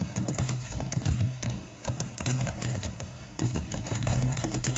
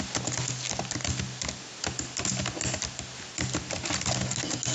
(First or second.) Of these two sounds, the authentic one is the second